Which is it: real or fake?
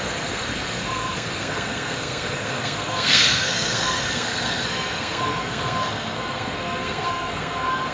fake